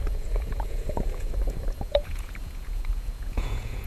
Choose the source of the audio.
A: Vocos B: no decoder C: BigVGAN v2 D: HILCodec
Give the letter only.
A